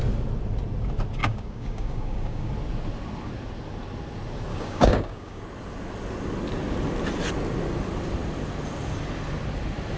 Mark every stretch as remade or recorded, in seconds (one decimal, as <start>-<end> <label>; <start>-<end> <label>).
0.0-1.2 recorded; 1.2-2.5 remade; 2.5-4.5 recorded; 4.5-5.4 remade; 5.4-10.0 recorded